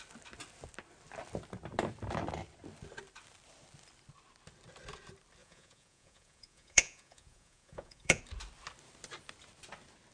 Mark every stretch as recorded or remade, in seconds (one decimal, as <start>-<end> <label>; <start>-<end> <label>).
0.0-5.4 recorded; 5.4-8.2 remade; 8.2-10.1 recorded